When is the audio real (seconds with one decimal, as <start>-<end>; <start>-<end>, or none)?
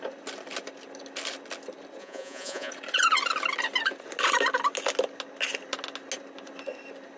0.0-2.0; 2.7-7.2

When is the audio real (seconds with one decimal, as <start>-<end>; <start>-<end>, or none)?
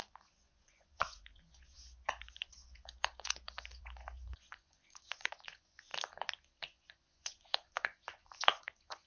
5.9-6.6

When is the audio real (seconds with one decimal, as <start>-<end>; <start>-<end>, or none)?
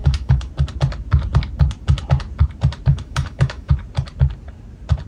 0.5-2.9; 3.7-5.1